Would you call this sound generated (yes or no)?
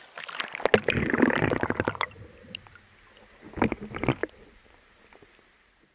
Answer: no